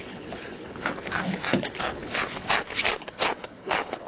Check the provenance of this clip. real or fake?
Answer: fake